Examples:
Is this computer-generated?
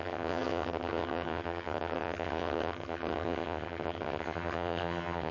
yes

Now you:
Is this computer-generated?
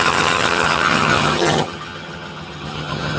yes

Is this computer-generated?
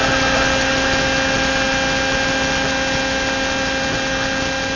no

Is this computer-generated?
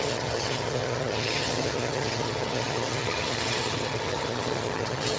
yes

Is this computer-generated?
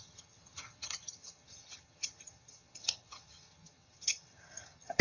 yes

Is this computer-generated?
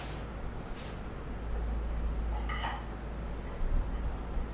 no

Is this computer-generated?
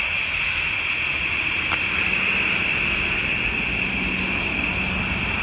no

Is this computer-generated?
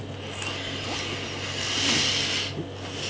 no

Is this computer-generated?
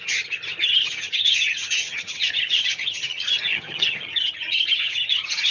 yes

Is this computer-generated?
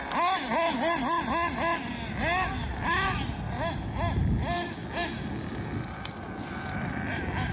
no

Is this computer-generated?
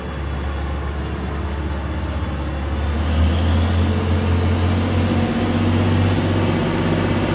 no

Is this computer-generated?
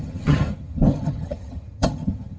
yes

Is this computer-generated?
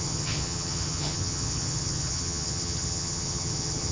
yes